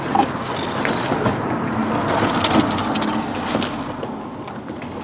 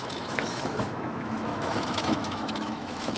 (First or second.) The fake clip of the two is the second